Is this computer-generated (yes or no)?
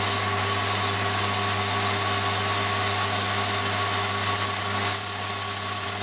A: no